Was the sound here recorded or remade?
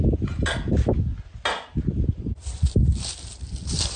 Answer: recorded